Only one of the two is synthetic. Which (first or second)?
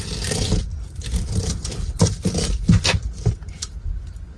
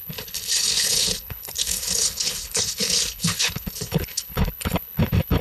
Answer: second